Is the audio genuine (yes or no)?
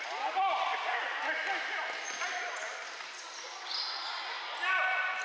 yes